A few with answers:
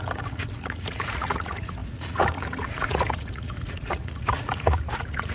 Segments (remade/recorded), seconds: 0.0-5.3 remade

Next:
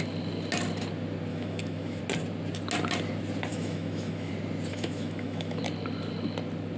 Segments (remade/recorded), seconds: 0.0-1.3 recorded; 1.3-2.0 remade; 2.0-3.5 recorded; 3.5-4.3 remade; 4.3-4.7 recorded; 4.7-5.6 remade; 5.6-6.8 recorded

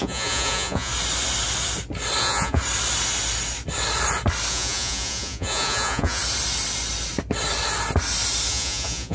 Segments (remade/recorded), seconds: 0.0-0.9 remade; 0.9-2.2 recorded; 2.2-2.6 remade; 2.6-4.5 recorded; 4.5-6.2 remade; 6.2-8.5 recorded; 8.5-9.1 remade

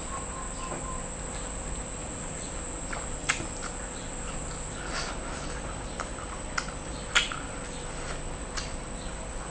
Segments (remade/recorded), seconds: 0.0-2.0 recorded; 2.0-2.5 remade; 2.5-9.5 recorded

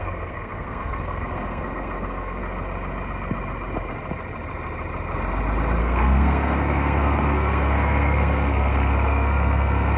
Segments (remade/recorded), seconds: 0.0-2.4 remade; 2.4-5.8 recorded; 5.8-10.0 remade

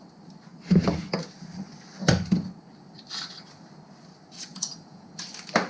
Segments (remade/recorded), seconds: 0.0-4.5 recorded; 4.5-5.1 remade; 5.1-5.7 recorded